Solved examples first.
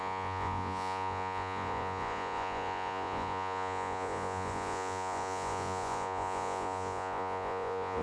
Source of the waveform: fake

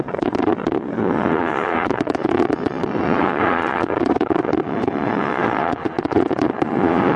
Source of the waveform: fake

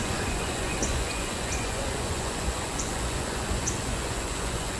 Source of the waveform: fake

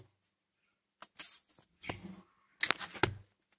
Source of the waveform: real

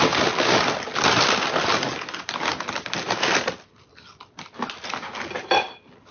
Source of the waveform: real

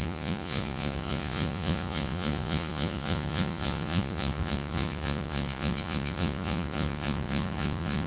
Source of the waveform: fake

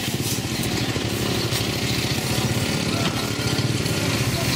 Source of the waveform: real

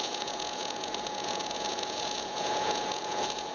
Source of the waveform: fake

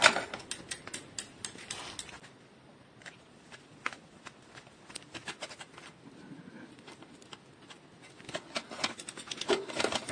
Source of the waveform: real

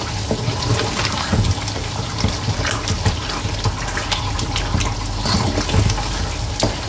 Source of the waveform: real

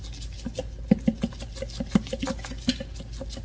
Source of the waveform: real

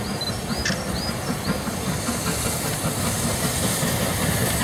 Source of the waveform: real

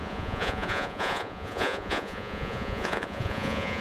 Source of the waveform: fake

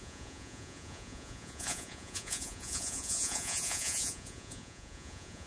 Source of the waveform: fake